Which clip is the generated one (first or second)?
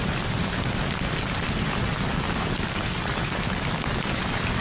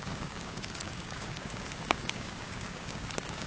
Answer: second